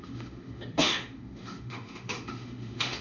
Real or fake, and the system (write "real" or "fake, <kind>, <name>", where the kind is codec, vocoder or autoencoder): fake, autoencoder, DAC-VAE